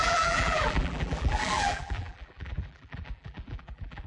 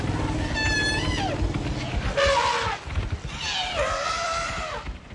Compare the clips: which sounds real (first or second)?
second